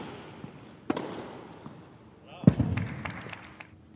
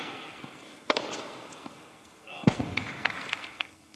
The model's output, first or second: second